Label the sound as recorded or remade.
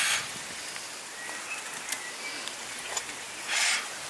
recorded